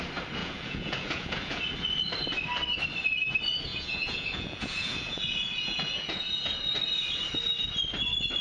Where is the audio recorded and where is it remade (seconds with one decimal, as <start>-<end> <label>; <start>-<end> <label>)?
0.0-0.4 recorded; 0.4-1.6 remade; 1.6-3.7 recorded; 3.7-6.6 remade; 6.6-8.4 recorded